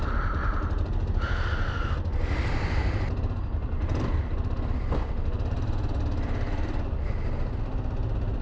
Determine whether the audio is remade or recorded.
recorded